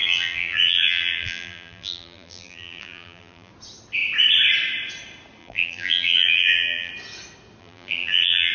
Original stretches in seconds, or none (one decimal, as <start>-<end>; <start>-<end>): 3.5-5.4; 6.9-7.6